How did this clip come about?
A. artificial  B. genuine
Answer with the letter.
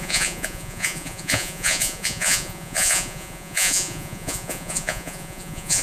A